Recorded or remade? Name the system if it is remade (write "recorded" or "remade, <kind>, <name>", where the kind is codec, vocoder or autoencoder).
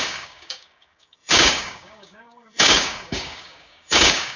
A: remade, codec, DAC